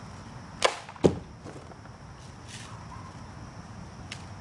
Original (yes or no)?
yes